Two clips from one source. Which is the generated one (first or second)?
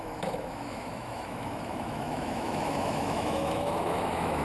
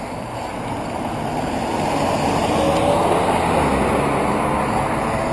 first